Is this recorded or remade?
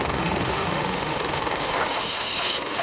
remade